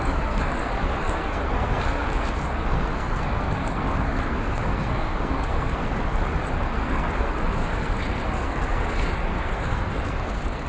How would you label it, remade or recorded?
remade